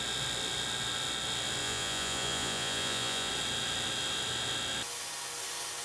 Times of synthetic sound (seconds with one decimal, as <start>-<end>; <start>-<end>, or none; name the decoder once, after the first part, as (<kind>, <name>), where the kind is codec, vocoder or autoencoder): 1.6-3.3 (vocoder, Vocos)